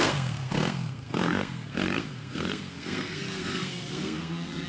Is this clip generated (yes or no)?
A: yes